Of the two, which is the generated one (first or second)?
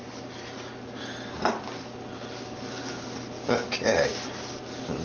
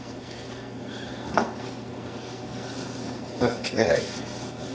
second